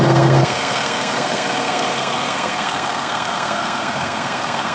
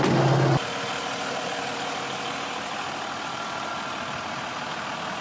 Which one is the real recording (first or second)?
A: second